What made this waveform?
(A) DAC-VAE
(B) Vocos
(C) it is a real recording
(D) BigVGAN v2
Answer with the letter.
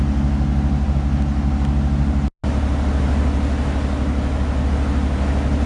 C